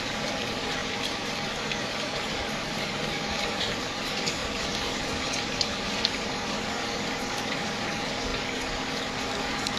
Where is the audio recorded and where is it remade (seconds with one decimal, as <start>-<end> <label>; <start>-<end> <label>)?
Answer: 0.0-9.8 remade